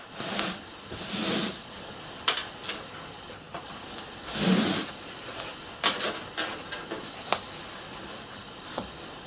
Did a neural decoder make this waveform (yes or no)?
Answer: no